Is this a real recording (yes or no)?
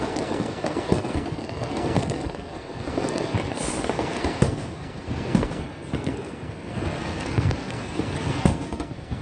no